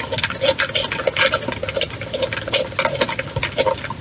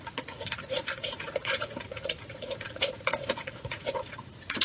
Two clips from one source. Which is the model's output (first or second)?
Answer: second